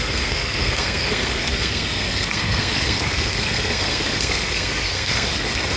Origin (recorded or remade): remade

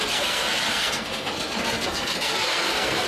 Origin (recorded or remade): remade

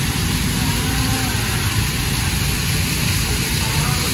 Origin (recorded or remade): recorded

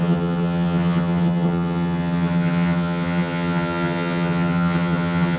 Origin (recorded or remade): remade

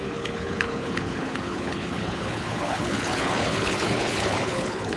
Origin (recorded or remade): remade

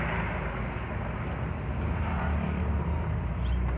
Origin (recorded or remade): recorded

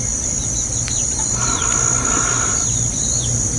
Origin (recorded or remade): recorded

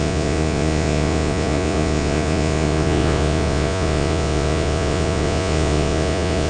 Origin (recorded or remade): remade